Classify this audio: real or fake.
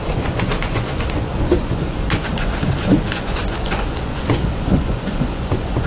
fake